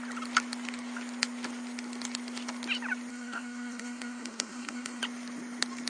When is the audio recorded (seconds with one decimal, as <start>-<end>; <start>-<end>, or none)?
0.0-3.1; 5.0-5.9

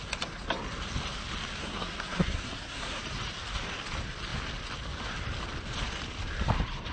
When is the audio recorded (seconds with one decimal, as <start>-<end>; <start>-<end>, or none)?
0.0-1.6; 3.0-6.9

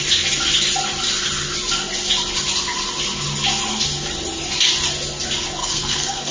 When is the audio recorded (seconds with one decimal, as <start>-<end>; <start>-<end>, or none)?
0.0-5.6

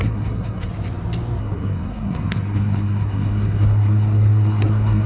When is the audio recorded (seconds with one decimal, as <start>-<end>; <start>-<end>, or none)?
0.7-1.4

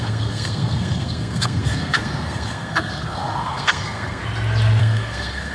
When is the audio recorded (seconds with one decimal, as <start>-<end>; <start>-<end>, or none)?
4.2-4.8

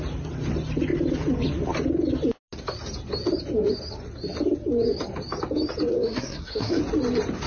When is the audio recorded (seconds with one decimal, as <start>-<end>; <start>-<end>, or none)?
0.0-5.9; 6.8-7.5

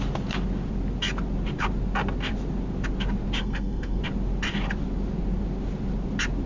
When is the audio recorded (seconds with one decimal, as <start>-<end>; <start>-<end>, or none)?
0.0-3.4; 4.0-6.5

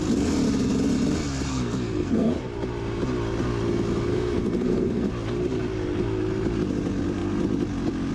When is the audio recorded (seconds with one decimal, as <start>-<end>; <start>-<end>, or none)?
0.0-1.5; 2.3-4.1; 5.1-8.1